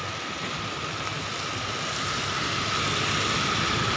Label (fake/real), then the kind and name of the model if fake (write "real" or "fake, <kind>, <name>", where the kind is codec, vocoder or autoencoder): real